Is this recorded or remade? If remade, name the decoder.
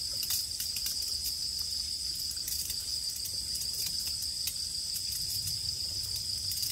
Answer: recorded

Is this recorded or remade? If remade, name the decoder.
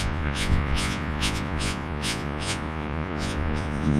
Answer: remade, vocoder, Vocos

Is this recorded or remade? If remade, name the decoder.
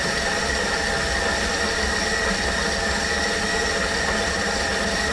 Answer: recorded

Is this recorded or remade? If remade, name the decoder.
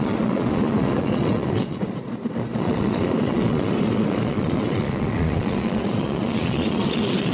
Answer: remade, vocoder, Vocos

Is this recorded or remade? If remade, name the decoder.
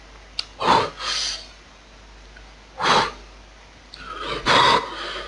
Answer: recorded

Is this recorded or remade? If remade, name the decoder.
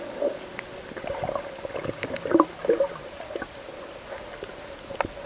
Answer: recorded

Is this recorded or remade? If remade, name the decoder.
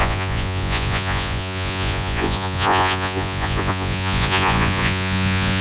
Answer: remade, vocoder, Vocos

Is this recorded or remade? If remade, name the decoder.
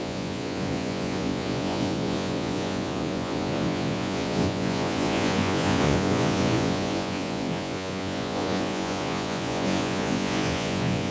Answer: remade, vocoder, Vocos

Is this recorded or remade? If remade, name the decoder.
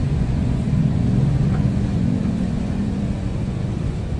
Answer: remade, vocoder, Vocos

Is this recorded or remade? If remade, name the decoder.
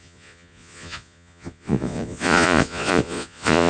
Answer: remade, vocoder, Vocos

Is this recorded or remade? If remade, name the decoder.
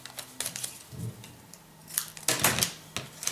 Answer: recorded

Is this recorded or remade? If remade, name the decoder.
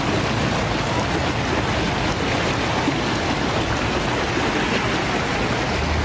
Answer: recorded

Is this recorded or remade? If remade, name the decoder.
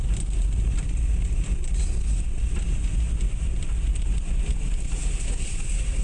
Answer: recorded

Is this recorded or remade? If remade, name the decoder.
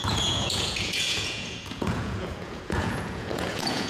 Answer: remade, vocoder, Vocos